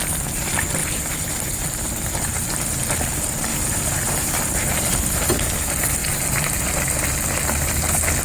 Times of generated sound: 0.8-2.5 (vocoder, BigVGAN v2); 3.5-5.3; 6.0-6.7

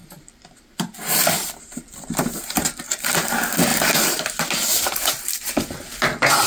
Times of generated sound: 0.0-2.2 (vocoder, BigVGAN v2); 3.7-4.4

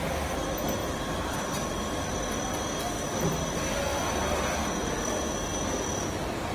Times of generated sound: 0.8-1.7 (vocoder, BigVGAN v2)

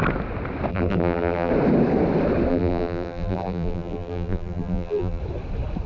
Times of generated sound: 0.7-1.5 (vocoder, BigVGAN v2); 2.5-5.2

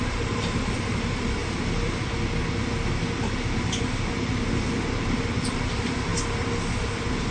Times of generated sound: 0.0-1.4 (vocoder, BigVGAN v2); 5.0-6.1

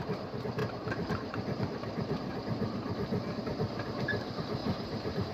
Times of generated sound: 4.6-5.3 (vocoder, BigVGAN v2)

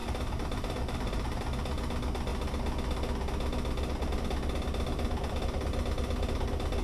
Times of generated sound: 0.0-1.4 (vocoder, BigVGAN v2)

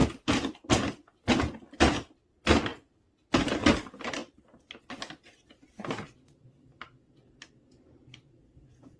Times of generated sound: 2.7-3.5 (vocoder, BigVGAN v2)